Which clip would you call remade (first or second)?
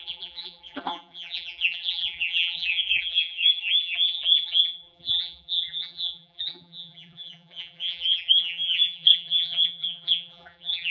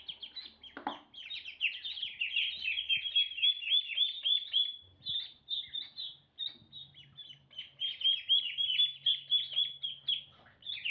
first